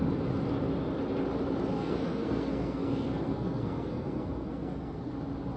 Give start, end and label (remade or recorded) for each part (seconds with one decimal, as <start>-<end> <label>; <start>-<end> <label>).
0.0-1.7 recorded; 1.7-5.1 remade; 5.1-5.6 recorded